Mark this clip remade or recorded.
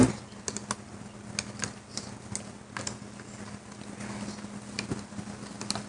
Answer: recorded